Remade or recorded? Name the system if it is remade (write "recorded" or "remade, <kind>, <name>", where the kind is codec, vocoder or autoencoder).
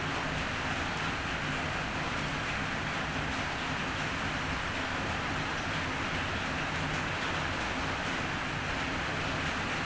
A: recorded